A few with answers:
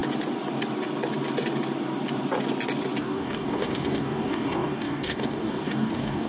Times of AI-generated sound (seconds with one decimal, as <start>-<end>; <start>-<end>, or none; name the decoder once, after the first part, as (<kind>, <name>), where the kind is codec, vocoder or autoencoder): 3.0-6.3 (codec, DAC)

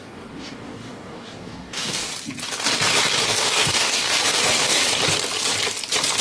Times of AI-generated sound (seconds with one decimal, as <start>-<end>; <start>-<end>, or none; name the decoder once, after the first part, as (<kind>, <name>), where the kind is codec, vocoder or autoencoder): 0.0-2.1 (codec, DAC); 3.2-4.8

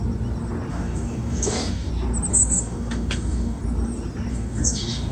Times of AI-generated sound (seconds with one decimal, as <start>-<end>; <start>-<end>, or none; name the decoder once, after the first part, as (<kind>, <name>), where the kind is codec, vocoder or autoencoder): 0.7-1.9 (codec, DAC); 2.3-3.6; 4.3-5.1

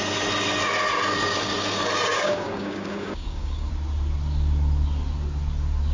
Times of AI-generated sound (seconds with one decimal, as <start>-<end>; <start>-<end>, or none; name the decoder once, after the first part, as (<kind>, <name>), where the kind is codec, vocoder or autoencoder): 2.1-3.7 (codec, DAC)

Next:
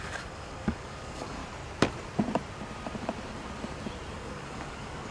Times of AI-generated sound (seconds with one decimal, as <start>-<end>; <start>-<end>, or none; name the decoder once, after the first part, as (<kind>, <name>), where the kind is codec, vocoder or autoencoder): 0.0-1.4 (codec, DAC); 4.1-5.1

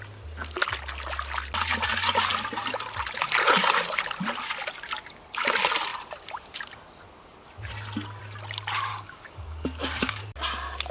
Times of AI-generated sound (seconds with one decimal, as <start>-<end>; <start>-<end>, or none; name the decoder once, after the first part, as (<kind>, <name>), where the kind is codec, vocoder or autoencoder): 8.9-10.2 (codec, DAC)